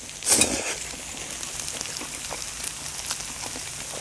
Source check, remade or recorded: recorded